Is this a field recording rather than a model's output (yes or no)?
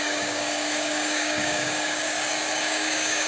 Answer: no